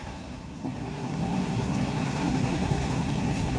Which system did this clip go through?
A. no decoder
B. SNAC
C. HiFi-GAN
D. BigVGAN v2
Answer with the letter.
B